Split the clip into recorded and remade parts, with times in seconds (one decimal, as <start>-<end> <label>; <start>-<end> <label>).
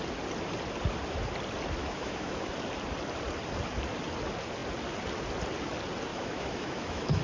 0.0-1.8 recorded; 1.8-2.5 remade; 2.5-6.1 recorded; 6.1-7.2 remade